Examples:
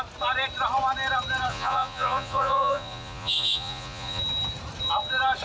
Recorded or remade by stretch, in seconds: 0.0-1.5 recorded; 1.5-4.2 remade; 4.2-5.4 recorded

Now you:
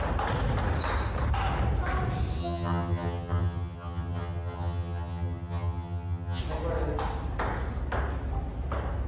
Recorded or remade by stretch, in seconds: 0.0-2.4 recorded; 2.4-6.4 remade; 6.4-9.1 recorded

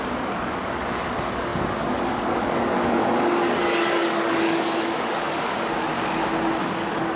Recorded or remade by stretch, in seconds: 0.0-5.9 remade; 5.9-6.6 recorded; 6.6-7.2 remade